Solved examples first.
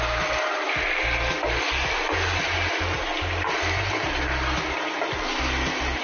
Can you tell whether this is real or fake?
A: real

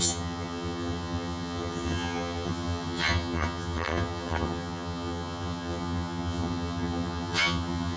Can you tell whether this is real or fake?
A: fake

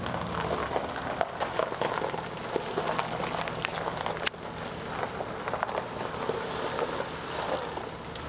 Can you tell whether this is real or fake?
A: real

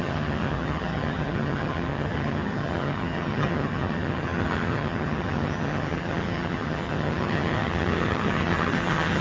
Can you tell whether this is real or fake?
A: fake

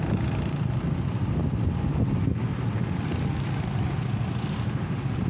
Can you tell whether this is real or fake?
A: real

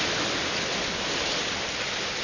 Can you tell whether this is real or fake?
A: real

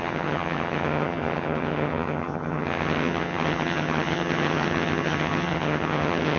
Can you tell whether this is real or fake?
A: fake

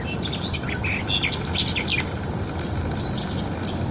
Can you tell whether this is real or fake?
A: real